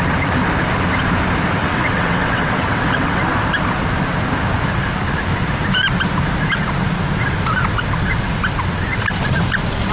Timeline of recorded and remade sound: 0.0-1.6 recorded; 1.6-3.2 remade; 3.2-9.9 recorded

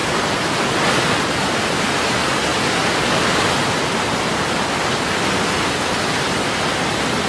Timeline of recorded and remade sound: 0.0-7.3 recorded

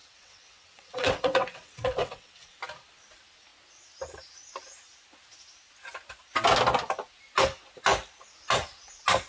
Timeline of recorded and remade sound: 0.0-2.6 remade; 2.6-9.3 recorded

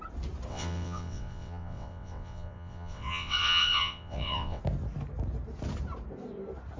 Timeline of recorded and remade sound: 0.0-0.5 recorded; 0.5-4.6 remade; 4.6-6.8 recorded